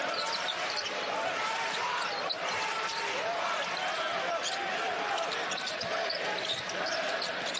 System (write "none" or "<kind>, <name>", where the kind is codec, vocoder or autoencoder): none